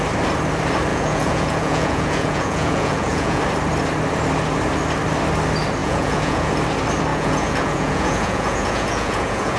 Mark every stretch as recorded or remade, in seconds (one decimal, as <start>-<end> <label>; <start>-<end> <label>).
0.0-0.9 recorded; 0.9-3.4 remade; 3.4-5.8 recorded; 5.8-6.5 remade; 6.5-7.1 recorded; 7.1-9.6 remade